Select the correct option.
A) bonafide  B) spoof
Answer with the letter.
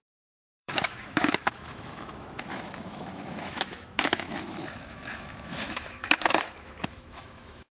B